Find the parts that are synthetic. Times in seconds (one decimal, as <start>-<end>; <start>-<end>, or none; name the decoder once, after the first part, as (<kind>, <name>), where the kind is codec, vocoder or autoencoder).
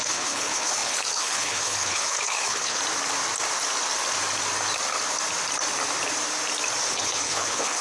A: 0.0-2.8 (codec, HILCodec); 6.9-7.8